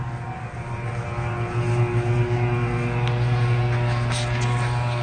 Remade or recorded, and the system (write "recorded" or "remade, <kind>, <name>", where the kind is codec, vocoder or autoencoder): recorded